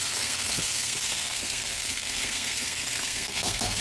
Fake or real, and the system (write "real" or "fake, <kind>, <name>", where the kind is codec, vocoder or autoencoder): fake, codec, SNAC